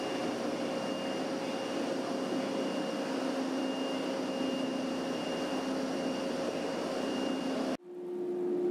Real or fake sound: real